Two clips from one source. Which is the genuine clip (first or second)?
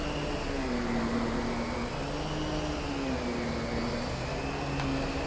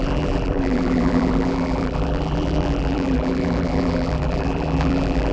first